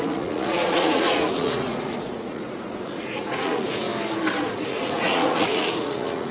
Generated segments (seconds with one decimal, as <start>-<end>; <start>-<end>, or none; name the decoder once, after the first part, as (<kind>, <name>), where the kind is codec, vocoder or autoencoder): 0.0-3.9 (vocoder, Vocos); 4.4-6.3